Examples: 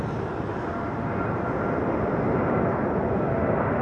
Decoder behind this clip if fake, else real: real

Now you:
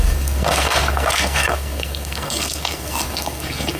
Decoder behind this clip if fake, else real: fake, codec, SNAC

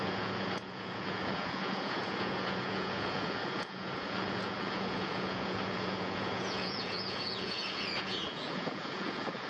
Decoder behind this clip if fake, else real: fake, vocoder, Vocos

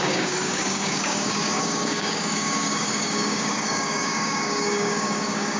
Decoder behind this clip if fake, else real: fake, codec, DAC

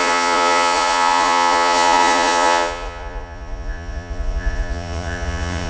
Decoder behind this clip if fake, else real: fake, vocoder, Vocos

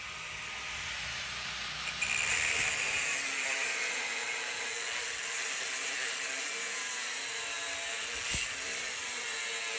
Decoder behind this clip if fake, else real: real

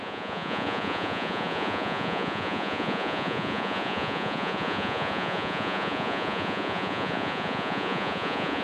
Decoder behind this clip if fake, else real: fake, vocoder, Vocos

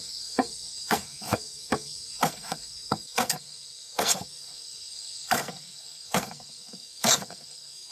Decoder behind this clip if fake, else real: fake, codec, SNAC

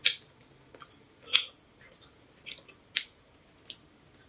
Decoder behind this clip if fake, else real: real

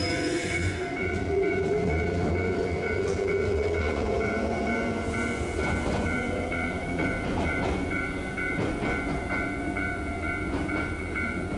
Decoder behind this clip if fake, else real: fake, vocoder, Vocos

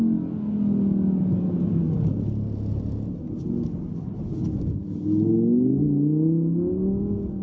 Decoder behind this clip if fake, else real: real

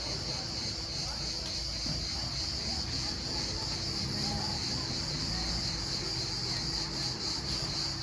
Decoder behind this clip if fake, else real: real